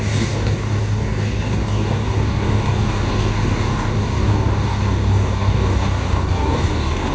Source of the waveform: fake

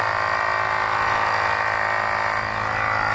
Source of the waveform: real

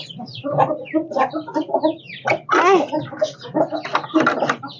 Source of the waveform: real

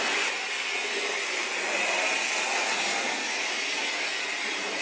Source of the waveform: real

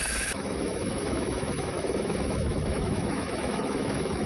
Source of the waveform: fake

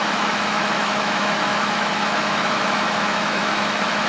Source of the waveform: fake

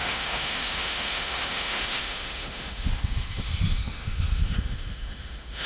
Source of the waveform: fake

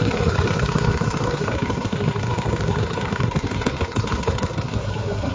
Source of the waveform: fake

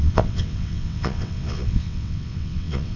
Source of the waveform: fake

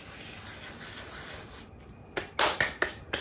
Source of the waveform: real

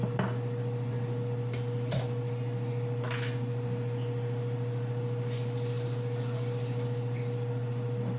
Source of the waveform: real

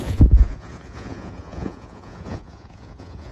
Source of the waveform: fake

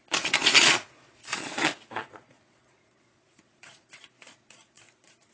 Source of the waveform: fake